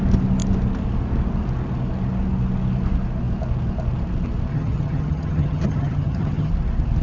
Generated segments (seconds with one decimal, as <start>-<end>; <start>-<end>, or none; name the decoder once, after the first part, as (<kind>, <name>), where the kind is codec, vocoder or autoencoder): 4.5-6.5 (vocoder, HiFi-GAN)